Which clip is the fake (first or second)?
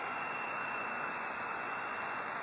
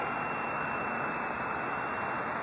first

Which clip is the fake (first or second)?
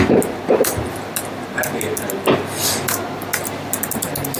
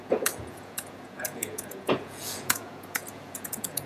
second